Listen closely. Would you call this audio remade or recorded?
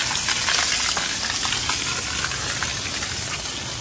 recorded